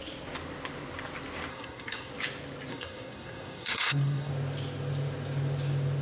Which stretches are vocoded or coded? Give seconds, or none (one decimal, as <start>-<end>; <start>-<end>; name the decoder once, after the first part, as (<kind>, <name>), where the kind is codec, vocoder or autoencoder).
1.5-2.1 (codec, SNAC); 2.7-4.3